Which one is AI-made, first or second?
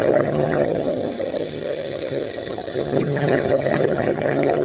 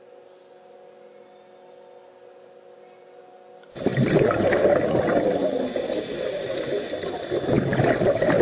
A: first